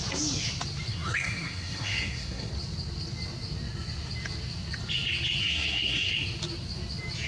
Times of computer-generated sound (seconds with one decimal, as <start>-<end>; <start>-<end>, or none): 0.9-2.5; 5.4-6.1